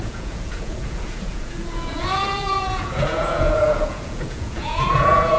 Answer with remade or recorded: remade